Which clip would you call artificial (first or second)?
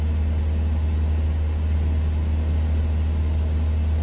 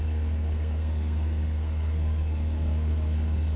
second